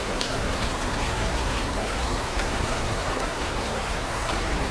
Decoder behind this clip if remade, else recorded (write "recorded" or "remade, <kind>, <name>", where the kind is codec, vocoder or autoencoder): remade, codec, SNAC